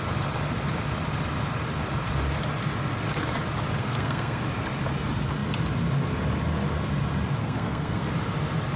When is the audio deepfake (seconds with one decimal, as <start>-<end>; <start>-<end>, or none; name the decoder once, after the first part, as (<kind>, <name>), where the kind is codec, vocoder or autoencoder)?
3.8-4.4 (codec, SNAC); 7.4-8.1